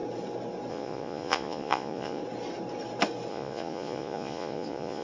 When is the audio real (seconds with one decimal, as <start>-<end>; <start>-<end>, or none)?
0.0-0.7; 2.2-3.3